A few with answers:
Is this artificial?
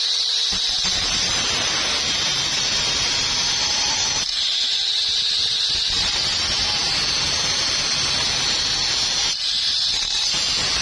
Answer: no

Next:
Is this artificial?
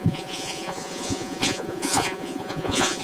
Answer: yes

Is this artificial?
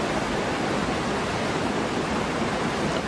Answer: no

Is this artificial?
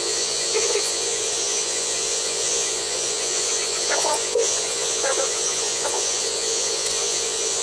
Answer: yes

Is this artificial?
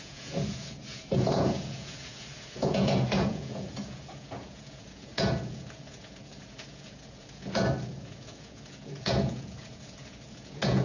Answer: yes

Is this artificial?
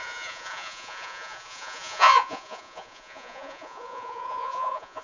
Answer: yes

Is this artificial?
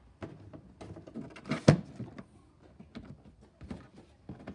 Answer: no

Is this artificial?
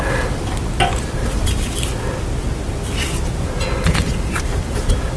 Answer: no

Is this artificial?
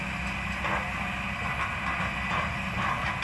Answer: no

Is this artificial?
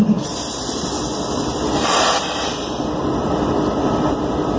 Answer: no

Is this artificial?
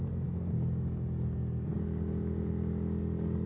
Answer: no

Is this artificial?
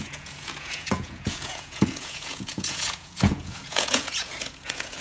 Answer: yes